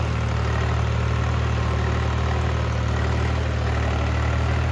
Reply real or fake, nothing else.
real